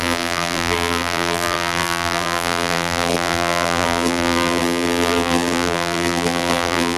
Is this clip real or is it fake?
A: fake